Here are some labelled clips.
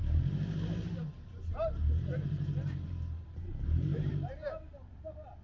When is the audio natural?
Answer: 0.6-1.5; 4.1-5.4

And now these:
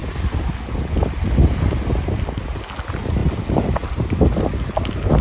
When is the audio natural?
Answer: 0.0-3.2; 4.2-5.2

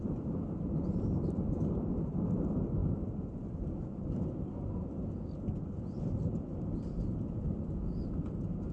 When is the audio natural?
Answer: 0.0-8.7

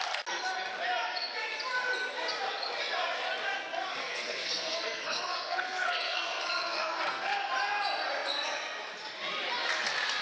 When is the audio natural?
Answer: 0.0-4.0; 7.5-10.2